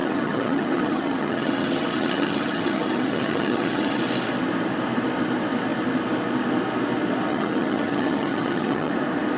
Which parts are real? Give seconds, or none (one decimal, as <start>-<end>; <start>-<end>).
4.0-7.3; 8.9-9.4